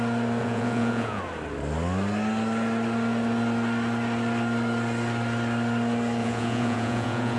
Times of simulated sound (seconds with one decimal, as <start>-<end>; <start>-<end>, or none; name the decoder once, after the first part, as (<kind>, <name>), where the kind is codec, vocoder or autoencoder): 0.4-1.2 (vocoder, Vocos); 6.2-7.4